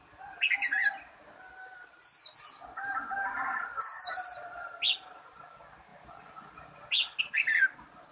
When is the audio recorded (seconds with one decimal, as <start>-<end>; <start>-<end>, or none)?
0.0-8.1